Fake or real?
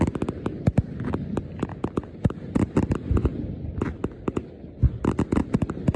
real